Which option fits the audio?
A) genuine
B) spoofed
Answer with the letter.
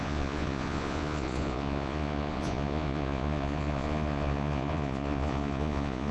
B